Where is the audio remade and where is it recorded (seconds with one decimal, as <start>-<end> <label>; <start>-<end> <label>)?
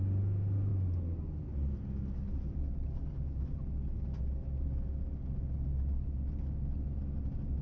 0.0-7.6 recorded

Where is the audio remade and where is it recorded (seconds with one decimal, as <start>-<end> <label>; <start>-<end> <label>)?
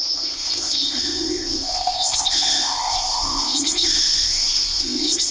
0.0-5.3 remade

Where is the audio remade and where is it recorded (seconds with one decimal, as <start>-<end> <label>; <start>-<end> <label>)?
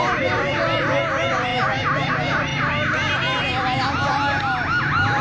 0.0-5.2 recorded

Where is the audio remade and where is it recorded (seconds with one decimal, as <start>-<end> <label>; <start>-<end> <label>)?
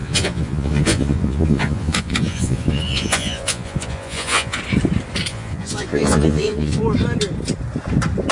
0.0-4.6 remade; 4.6-5.3 recorded; 5.3-6.8 remade; 6.8-8.3 recorded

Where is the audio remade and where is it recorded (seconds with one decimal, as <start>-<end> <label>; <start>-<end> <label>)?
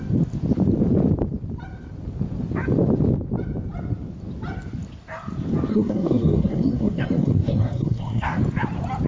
0.0-5.7 recorded; 5.7-8.4 remade; 8.4-9.1 recorded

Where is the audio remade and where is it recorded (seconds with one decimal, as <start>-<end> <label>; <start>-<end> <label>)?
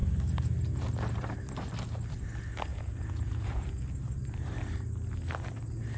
0.0-2.7 recorded; 2.7-3.7 remade; 3.7-6.0 recorded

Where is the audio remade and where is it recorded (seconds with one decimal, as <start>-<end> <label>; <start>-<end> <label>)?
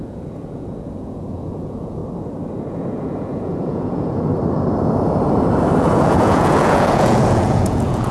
0.0-2.0 remade; 2.0-2.7 recorded; 2.7-4.3 remade; 4.3-5.8 recorded; 5.8-8.1 remade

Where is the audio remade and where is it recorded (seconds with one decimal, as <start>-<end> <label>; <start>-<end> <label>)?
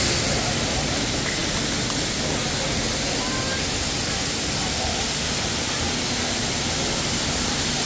0.0-7.9 recorded